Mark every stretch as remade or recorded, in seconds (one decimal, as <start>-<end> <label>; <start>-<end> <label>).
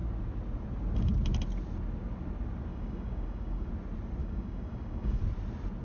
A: 0.0-2.7 recorded; 2.7-3.7 remade; 3.7-4.2 recorded; 4.2-5.2 remade; 5.2-5.8 recorded